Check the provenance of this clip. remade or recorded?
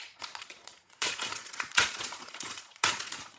remade